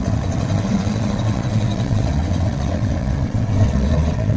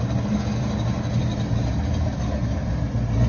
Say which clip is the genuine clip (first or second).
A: second